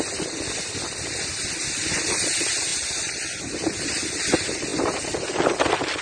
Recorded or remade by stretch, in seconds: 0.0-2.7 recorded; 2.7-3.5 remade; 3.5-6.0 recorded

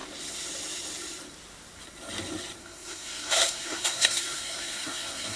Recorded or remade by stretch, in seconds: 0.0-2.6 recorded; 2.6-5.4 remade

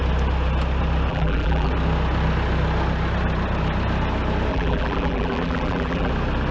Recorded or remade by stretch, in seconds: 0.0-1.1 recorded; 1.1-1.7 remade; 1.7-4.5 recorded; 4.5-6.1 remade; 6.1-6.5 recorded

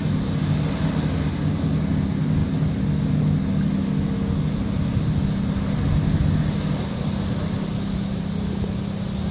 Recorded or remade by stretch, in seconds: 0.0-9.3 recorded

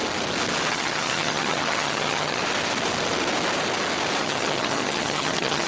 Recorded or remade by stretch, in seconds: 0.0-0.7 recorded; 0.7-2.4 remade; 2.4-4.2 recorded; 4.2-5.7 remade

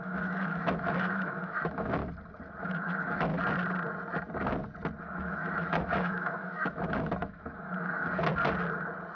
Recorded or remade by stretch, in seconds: 0.0-2.0 remade; 2.0-2.6 recorded; 2.6-3.3 remade; 3.3-5.0 recorded; 5.0-8.3 remade; 8.3-9.2 recorded

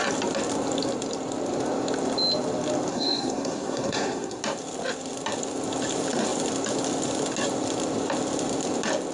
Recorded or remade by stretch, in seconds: 0.0-2.9 recorded; 2.9-4.4 remade; 4.4-9.1 recorded

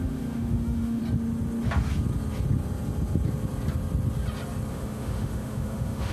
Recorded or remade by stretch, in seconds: 0.0-1.0 remade; 1.0-4.7 recorded; 4.7-6.1 remade